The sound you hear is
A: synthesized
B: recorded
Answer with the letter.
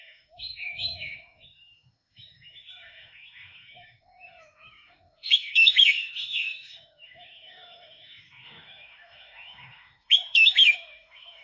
A